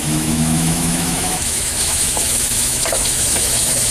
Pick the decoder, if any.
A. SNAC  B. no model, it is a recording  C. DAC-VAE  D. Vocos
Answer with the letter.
C